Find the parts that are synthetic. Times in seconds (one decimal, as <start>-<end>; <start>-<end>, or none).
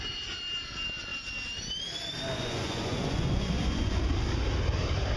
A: 2.3-4.0